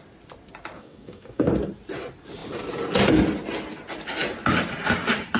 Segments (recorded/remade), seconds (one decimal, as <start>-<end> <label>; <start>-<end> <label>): 0.0-0.8 recorded; 0.8-1.5 remade; 1.5-5.4 recorded